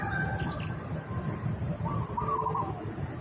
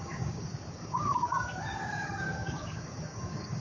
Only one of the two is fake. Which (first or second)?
second